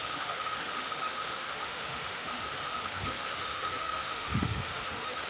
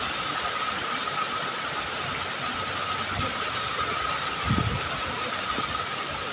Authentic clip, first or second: second